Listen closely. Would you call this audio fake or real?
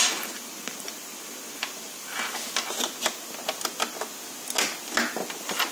real